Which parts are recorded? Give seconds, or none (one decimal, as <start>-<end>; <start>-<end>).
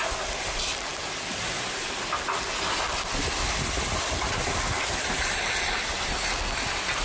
0.0-7.0